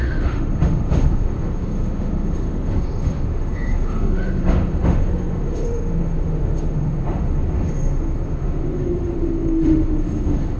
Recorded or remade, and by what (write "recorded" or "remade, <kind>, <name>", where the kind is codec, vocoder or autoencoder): remade, autoencoder, DAC-VAE